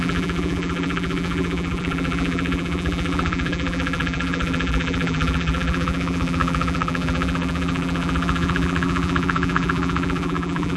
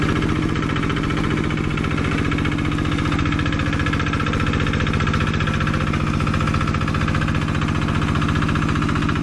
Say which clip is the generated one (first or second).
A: first